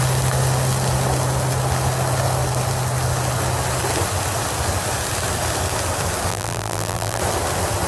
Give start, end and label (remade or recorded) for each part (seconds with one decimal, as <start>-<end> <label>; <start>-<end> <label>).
0.0-6.3 recorded; 6.3-7.2 remade; 7.2-7.9 recorded

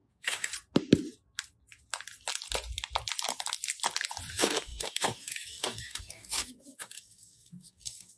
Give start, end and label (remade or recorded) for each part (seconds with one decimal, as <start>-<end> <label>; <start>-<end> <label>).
0.0-0.5 remade; 0.5-4.3 recorded; 4.3-8.2 remade